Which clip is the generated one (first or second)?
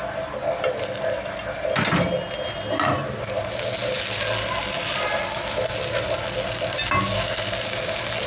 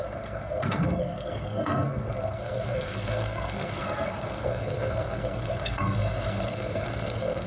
second